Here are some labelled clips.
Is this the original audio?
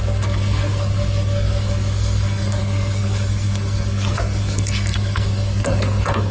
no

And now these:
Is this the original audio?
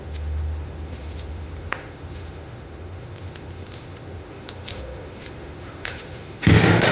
no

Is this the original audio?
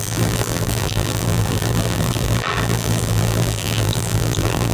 no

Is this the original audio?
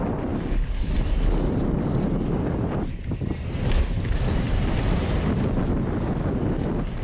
yes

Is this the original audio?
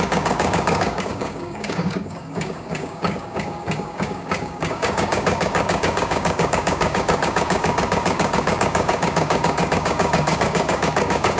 no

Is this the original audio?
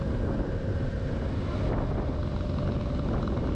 yes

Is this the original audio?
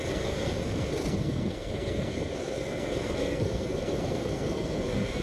no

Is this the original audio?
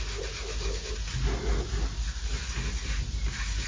yes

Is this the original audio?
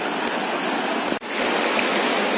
yes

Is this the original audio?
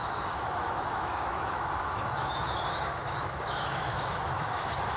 no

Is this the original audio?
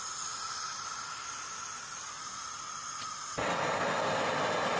yes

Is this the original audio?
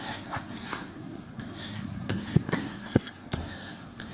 no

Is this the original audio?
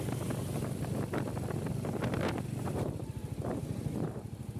yes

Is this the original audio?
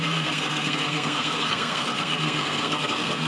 no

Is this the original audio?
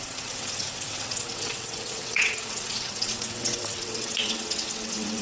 no